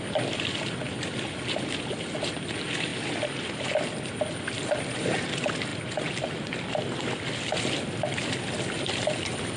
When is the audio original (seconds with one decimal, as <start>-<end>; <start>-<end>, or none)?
0.0-9.6

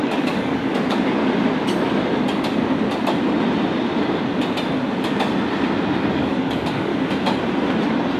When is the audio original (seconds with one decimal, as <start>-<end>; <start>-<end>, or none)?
1.2-6.1; 6.9-8.2

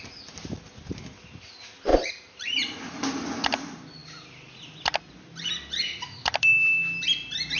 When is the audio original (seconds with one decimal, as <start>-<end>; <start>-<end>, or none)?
0.0-1.9; 2.8-7.6

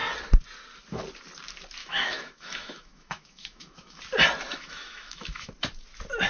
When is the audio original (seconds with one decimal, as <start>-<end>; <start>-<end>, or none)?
0.0-1.8; 4.0-4.5; 5.5-6.3

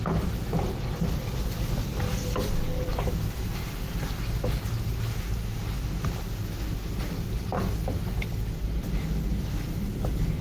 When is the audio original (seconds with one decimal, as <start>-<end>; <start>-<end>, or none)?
0.0-10.4

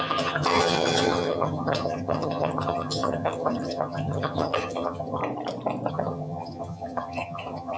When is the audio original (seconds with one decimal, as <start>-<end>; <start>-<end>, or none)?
5.2-5.9